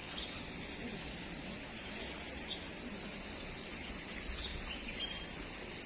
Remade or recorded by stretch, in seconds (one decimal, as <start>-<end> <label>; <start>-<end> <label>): 0.0-1.2 remade; 1.2-1.7 recorded; 1.7-2.5 remade; 2.5-3.1 recorded; 3.1-4.0 remade; 4.0-5.9 recorded

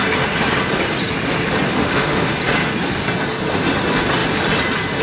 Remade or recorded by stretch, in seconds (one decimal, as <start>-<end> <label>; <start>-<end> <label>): 0.0-1.7 recorded; 1.7-2.4 remade; 2.4-5.0 recorded

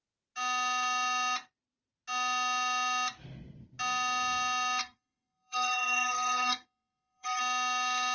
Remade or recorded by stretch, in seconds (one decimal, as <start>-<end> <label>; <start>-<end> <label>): 0.0-4.8 recorded; 4.8-7.4 remade; 7.4-8.1 recorded